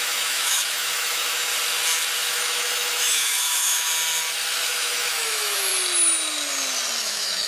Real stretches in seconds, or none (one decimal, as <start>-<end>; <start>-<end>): 1.5-2.3; 3.9-4.7; 5.7-7.0